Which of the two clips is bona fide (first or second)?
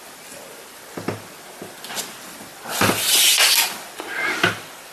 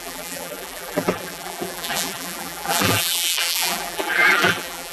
first